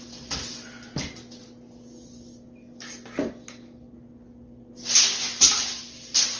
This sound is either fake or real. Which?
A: real